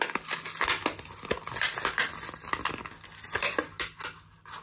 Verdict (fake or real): real